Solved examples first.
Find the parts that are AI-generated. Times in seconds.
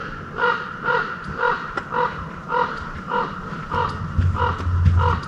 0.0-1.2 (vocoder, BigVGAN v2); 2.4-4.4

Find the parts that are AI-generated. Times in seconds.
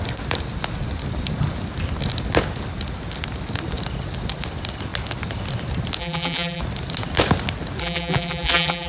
6.0-6.6 (vocoder, BigVGAN v2); 7.8-8.9